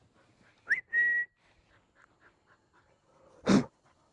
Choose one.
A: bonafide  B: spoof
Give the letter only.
A